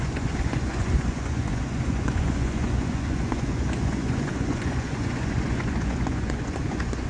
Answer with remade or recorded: remade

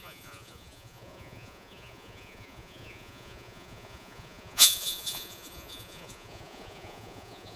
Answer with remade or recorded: remade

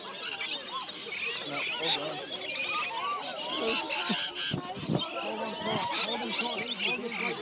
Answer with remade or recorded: recorded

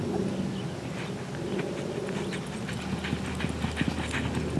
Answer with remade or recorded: recorded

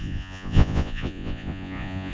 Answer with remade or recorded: remade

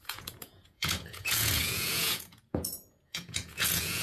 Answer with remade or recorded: remade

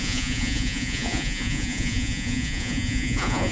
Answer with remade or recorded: remade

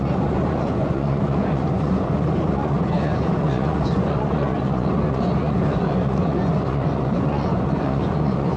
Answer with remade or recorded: remade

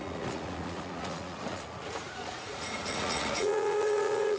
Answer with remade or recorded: remade